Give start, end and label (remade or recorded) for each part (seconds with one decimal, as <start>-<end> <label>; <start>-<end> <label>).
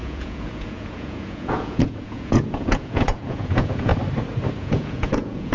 0.0-3.9 remade; 3.9-4.6 recorded; 4.6-5.5 remade